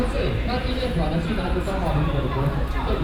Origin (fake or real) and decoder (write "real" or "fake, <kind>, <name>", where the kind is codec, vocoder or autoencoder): fake, vocoder, BigVGAN v2